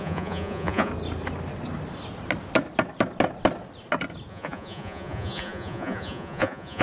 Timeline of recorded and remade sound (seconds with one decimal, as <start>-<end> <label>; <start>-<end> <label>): 0.0-0.9 remade; 0.9-4.3 recorded; 4.3-6.8 remade